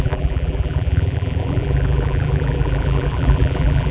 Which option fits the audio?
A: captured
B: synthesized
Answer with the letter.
B